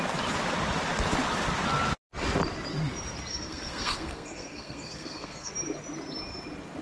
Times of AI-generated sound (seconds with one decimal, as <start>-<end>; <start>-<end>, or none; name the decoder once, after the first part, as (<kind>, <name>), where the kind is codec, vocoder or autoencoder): 3.3-5.5 (codec, SNAC)